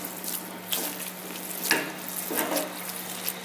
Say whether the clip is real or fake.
real